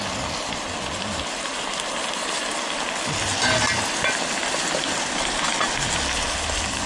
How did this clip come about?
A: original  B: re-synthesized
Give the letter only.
A